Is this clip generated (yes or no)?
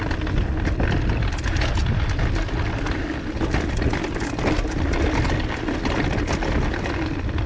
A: no